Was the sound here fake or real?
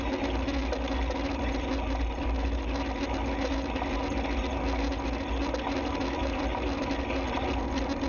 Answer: real